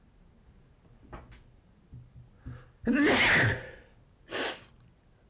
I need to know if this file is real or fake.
real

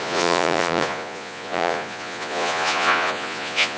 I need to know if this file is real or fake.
fake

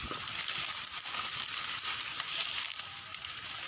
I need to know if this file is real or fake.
real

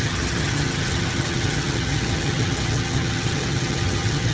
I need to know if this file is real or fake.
fake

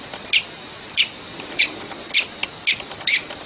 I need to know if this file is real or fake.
real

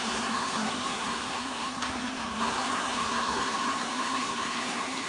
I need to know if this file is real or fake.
fake